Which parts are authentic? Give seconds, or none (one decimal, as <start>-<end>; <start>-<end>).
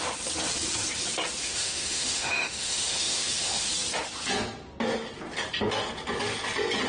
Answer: 0.0-1.4; 3.7-6.9